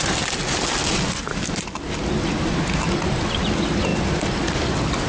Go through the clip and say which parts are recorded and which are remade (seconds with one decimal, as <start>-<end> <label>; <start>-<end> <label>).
0.0-5.1 recorded